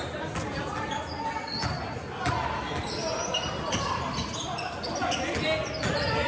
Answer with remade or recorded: recorded